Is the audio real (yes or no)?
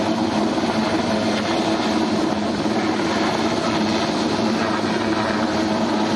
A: yes